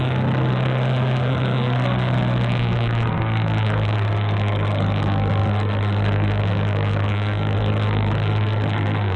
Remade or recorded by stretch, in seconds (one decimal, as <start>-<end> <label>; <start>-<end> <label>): 0.0-9.2 remade